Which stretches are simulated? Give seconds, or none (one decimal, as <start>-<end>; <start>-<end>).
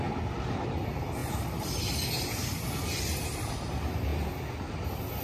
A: none